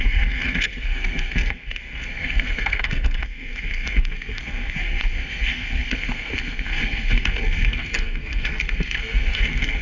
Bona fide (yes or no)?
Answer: no